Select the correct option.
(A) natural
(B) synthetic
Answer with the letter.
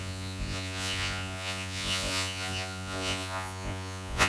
B